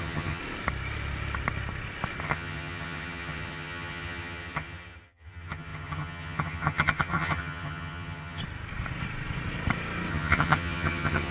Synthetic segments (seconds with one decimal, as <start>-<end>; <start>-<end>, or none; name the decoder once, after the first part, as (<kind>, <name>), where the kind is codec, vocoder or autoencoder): 0.0-0.4 (vocoder, HiFi-GAN); 2.2-8.4; 10.1-11.3